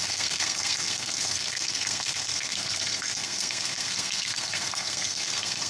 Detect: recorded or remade remade